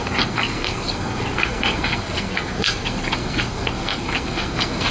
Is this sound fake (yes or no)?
yes